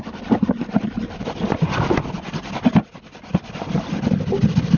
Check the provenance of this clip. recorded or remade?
recorded